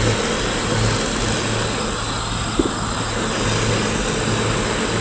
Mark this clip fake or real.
real